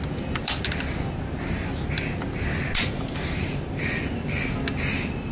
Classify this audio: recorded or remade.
recorded